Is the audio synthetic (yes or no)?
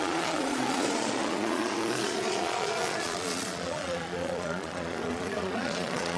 yes